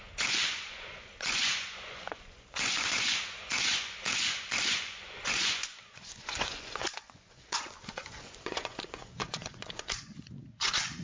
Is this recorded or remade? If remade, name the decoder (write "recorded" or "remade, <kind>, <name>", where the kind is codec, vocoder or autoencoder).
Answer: remade, vocoder, Vocos